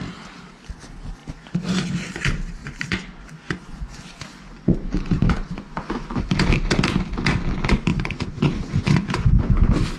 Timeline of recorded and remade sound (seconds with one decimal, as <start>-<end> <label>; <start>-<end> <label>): 0.0-1.2 recorded; 1.2-2.1 remade; 2.1-2.6 recorded; 2.6-6.2 remade; 6.2-7.9 recorded; 7.9-9.4 remade; 9.4-10.0 recorded